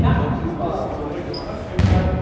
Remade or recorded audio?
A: recorded